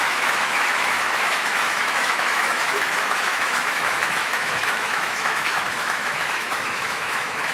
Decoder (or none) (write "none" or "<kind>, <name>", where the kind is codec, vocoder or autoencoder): autoencoder, DAC-VAE